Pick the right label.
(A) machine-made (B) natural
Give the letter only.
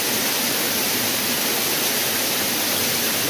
B